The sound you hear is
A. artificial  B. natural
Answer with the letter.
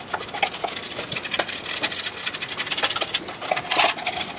B